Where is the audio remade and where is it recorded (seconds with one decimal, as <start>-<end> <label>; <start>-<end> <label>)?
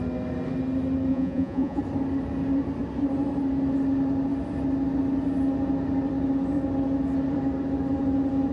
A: 0.0-1.1 recorded; 1.1-1.8 remade; 1.8-8.5 recorded